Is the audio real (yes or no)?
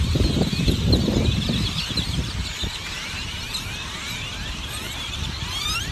no